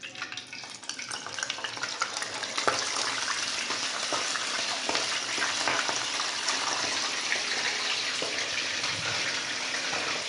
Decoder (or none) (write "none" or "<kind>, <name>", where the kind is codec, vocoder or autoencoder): none